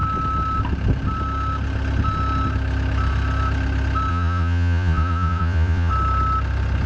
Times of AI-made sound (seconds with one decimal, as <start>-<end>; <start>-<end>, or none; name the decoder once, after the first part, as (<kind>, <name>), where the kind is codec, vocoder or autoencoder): 4.1-5.9 (vocoder, Vocos)